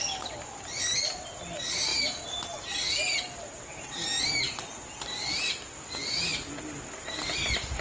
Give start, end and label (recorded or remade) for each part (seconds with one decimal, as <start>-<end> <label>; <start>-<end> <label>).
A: 0.0-7.8 recorded